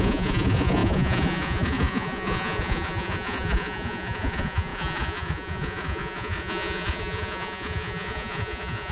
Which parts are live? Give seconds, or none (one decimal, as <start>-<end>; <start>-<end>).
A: none